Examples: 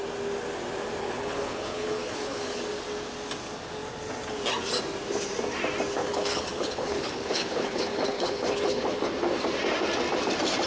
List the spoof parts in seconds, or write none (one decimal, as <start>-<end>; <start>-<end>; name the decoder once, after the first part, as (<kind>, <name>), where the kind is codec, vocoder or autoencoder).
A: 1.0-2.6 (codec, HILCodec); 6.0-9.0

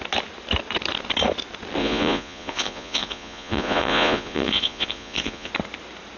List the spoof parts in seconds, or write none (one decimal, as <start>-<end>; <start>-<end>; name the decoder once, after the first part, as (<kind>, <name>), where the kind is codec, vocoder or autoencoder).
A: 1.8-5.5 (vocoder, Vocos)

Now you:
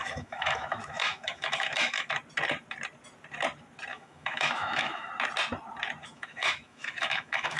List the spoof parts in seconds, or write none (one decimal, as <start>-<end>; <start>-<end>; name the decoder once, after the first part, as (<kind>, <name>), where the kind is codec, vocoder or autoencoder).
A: 0.0-2.1 (autoencoder, DAC-VAE); 3.9-5.1; 6.0-7.6

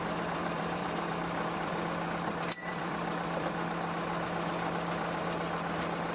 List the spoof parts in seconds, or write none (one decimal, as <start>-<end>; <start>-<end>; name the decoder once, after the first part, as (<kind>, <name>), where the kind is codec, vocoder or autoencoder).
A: 0.4-1.7 (vocoder, BigVGAN v2); 2.6-3.5

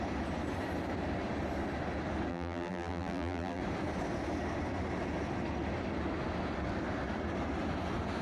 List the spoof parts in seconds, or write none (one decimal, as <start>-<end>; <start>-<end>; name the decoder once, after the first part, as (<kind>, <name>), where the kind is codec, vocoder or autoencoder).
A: 2.3-3.6 (vocoder, BigVGAN v2)

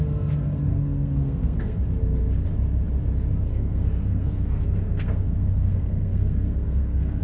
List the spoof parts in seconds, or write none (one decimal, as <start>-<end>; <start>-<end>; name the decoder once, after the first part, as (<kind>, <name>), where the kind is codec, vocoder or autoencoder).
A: 0.7-1.8 (codec, SNAC); 3.5-7.2

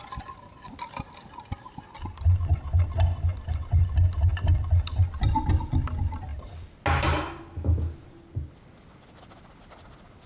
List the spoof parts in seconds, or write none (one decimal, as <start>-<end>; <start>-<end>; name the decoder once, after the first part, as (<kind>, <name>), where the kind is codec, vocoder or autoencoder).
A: 4.3-5.5 (vocoder, BigVGAN v2); 6.3-6.8